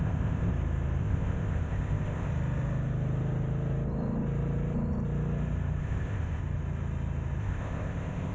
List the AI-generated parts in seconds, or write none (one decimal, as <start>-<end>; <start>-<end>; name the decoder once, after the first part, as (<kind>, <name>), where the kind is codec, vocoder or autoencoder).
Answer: 0.0-0.5 (codec, ZipCodec); 1.0-2.3; 5.8-6.4; 7.4-8.3